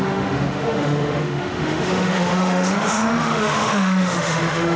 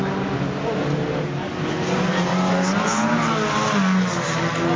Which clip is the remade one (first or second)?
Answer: first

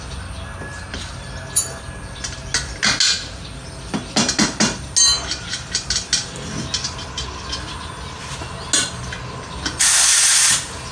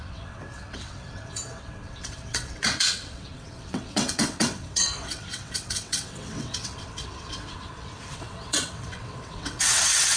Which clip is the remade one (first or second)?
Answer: second